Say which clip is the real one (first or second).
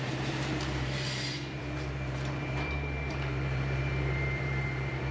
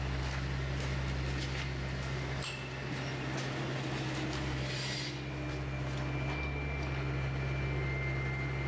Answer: second